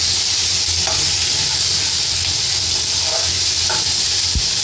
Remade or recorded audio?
recorded